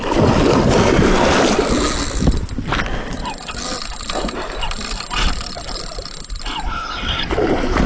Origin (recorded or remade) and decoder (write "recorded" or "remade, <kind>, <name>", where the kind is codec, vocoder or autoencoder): recorded